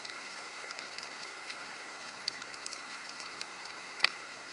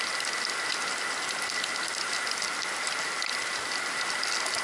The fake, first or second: first